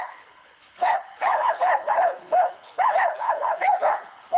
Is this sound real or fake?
fake